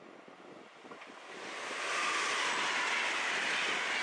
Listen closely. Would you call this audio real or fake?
real